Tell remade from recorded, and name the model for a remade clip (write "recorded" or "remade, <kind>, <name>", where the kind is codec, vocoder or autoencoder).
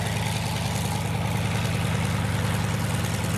recorded